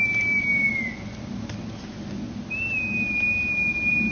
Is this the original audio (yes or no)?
yes